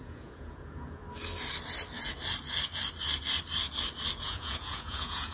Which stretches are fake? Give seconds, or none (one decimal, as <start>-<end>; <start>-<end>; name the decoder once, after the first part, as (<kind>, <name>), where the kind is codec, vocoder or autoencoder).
0.0-1.0 (vocoder, Vocos); 4.2-5.3